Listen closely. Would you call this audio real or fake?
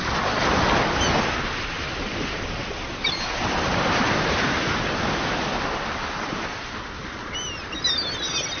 real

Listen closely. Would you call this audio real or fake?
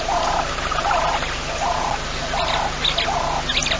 real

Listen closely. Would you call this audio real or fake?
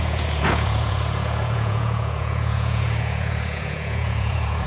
fake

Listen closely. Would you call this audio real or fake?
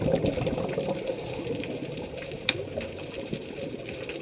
real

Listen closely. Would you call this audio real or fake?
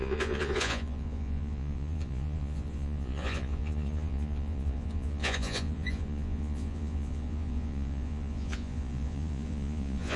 fake